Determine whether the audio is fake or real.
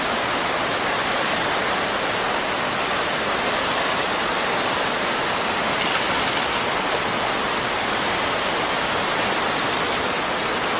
real